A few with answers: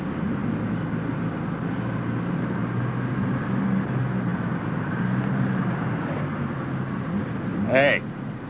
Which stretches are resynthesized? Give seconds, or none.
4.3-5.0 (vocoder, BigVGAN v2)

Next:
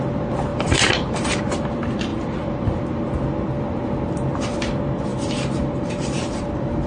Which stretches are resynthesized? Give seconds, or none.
0.5-1.4 (vocoder, BigVGAN v2); 2.1-2.8; 5.1-6.4

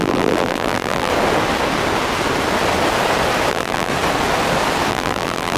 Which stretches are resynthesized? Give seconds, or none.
0.0-1.1 (vocoder, BigVGAN v2); 3.5-3.9; 4.9-5.6

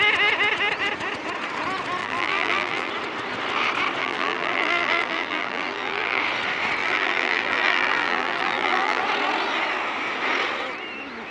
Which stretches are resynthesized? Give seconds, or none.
2.0-2.9 (vocoder, BigVGAN v2); 4.0-6.2; 6.8-9.0

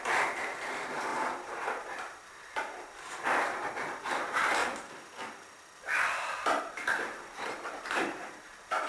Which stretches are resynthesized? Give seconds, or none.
0.0-4.6 (vocoder, BigVGAN v2); 6.6-8.9

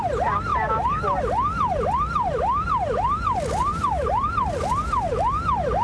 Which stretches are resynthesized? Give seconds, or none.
0.5-1.2 (vocoder, BigVGAN v2); 3.7-4.3

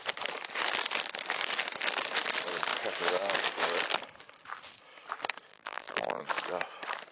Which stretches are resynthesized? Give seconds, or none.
5.5-6.2 (vocoder, BigVGAN v2)